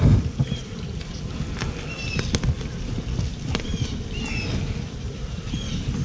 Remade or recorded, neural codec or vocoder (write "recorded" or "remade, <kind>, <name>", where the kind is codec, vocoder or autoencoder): recorded